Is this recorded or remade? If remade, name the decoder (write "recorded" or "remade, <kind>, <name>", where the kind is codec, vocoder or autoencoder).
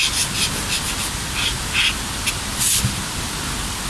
recorded